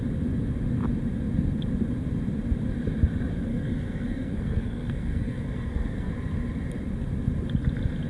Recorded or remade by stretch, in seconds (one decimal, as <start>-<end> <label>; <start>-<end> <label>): 0.0-3.5 recorded; 3.5-6.1 remade; 6.1-8.1 recorded